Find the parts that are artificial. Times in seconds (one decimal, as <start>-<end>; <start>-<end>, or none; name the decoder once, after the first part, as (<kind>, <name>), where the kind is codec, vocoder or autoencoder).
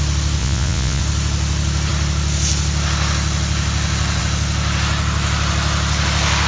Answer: 0.4-1.0 (vocoder, Vocos)